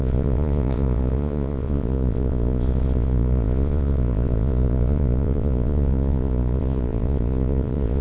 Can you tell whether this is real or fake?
fake